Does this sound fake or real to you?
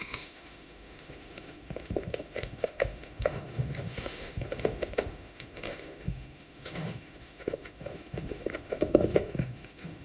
fake